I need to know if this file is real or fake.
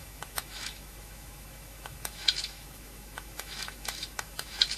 fake